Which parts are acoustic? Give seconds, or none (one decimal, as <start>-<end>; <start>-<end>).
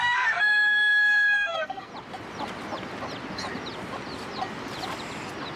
1.9-5.6